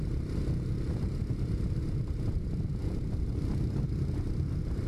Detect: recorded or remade recorded